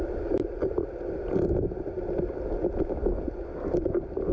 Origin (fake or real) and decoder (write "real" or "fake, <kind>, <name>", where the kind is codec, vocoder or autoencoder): real